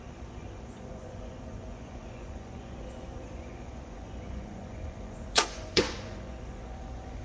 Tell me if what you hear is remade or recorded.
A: remade